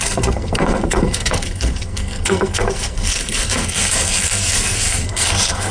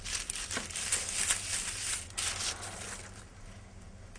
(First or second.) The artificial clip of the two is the first